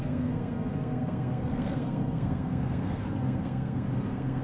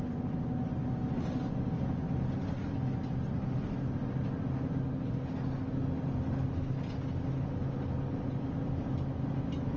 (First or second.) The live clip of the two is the second